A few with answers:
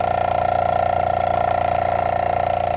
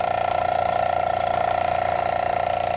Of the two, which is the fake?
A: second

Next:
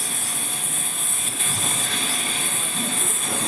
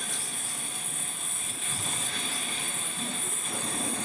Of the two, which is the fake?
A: second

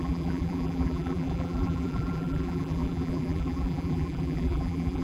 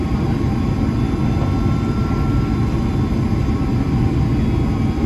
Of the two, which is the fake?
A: first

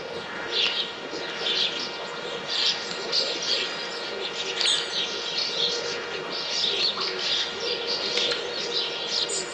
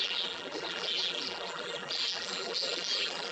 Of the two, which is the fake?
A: second